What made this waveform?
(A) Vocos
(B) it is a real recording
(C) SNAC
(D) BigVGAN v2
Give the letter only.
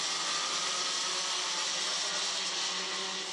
B